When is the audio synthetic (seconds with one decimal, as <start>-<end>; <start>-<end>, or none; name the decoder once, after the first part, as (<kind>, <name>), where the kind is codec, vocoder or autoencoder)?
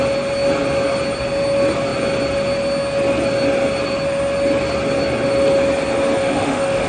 6.2-6.9 (autoencoder, DAC-VAE)